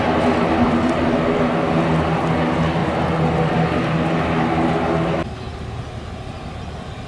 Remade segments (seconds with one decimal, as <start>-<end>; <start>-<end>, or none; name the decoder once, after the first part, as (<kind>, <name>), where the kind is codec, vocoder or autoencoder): none